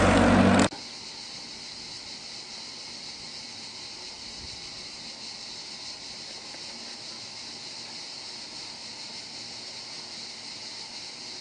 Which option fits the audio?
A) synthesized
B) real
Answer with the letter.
B